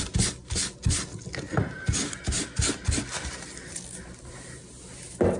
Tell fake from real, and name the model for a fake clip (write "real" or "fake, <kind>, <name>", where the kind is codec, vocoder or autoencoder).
real